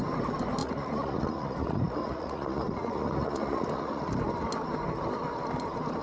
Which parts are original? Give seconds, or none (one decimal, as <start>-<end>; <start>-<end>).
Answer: 0.0-0.6; 4.1-6.0